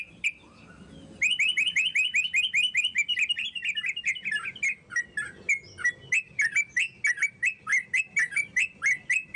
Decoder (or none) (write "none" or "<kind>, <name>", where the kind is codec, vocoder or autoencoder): none